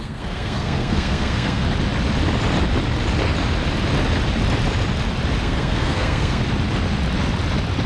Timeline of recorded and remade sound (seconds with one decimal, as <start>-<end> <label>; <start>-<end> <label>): 0.0-1.6 remade; 1.6-5.4 recorded; 5.4-6.4 remade; 6.4-7.9 recorded